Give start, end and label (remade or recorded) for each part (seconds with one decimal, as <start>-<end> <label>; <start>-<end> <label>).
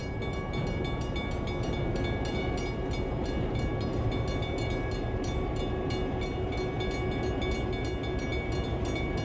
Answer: 0.0-9.2 recorded